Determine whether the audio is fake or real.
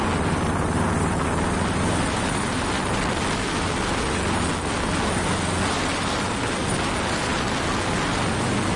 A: real